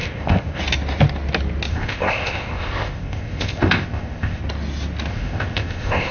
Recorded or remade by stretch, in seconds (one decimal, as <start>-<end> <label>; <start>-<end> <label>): 0.0-0.6 remade; 0.6-1.7 recorded; 1.7-4.4 remade; 4.4-5.1 recorded; 5.1-6.1 remade